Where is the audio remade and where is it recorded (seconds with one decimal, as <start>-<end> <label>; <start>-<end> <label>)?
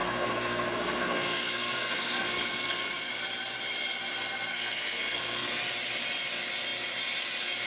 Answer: 0.0-3.1 remade; 3.1-4.5 recorded; 4.5-5.6 remade; 5.6-7.7 recorded